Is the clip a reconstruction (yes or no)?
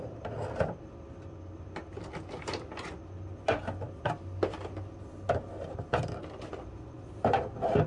no